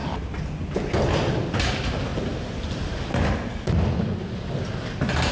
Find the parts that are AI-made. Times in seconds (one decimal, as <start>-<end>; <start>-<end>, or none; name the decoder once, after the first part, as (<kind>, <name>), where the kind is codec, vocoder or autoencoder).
none